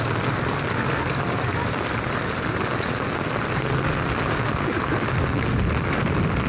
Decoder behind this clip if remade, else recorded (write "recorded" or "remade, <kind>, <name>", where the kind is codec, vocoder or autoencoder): recorded